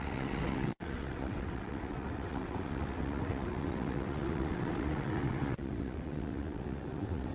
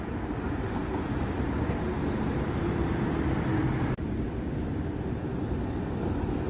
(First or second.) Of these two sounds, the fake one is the first